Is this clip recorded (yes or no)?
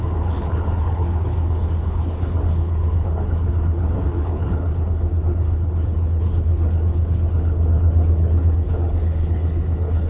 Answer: no